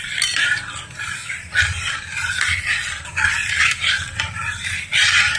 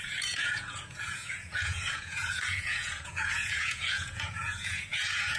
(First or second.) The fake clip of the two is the second